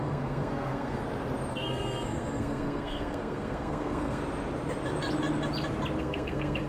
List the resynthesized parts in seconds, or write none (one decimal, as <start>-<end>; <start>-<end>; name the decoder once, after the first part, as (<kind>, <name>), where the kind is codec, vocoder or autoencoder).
0.0-1.0 (codec, SNAC); 1.5-4.2; 6.0-6.7